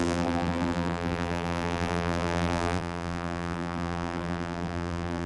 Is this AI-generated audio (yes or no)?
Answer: yes